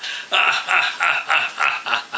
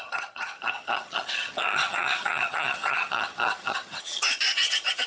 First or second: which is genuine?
first